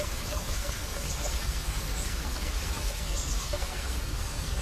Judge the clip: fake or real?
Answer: fake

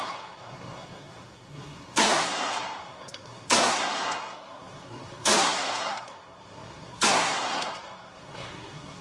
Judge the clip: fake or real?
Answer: fake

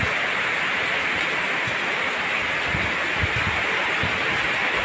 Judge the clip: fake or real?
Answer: real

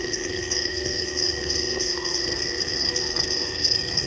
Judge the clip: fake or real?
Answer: fake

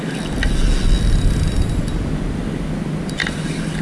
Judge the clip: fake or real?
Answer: real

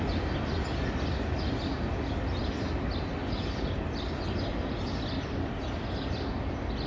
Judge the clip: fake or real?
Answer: real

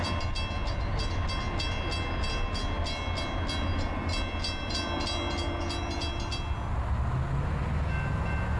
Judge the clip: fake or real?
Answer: real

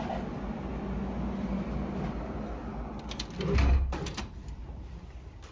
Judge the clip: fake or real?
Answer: real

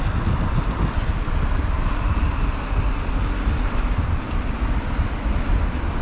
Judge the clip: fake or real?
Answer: real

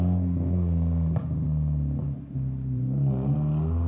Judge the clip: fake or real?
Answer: real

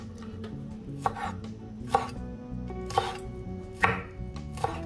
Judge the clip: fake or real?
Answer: real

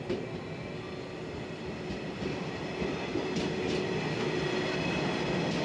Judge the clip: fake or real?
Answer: real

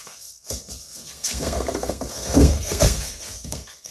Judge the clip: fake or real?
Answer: fake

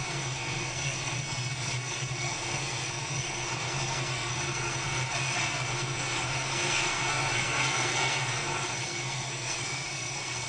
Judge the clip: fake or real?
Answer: fake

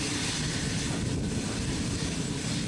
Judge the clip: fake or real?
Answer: real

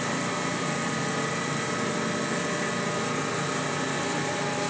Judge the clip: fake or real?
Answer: real